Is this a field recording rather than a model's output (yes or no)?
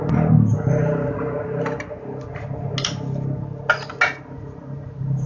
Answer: yes